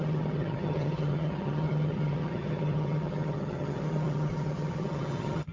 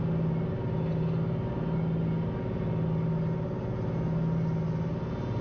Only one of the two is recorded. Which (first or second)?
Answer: second